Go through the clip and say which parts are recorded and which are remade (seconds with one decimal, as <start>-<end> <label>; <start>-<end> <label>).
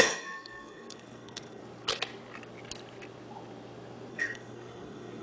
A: 0.0-1.6 remade; 1.6-4.1 recorded; 4.1-5.2 remade